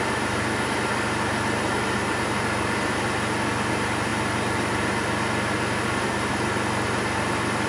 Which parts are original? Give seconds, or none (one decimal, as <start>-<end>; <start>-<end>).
0.0-7.7